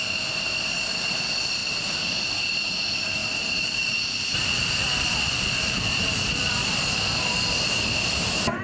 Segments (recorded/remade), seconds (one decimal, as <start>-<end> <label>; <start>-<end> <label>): 0.0-1.6 remade; 1.6-2.7 recorded; 2.7-8.6 remade